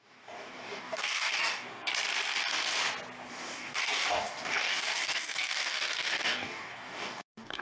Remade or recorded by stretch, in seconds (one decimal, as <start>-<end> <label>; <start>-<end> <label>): 0.0-1.9 remade; 1.9-3.3 recorded; 3.3-7.6 remade